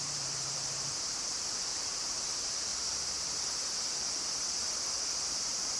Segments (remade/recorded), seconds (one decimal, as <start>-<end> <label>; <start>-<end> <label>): 0.0-2.7 remade; 2.7-4.5 recorded; 4.5-5.8 remade